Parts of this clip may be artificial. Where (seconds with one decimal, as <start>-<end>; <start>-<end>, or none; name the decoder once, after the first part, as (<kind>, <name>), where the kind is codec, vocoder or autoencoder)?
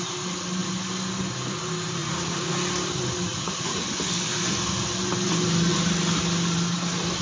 2.0-2.5 (vocoder, Vocos); 3.3-3.8